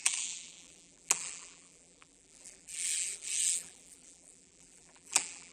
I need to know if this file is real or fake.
fake